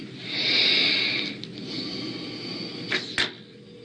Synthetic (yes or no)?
no